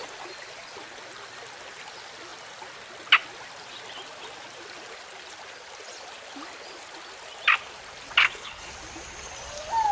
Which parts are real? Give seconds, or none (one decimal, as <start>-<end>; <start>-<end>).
0.0-8.2; 8.7-9.9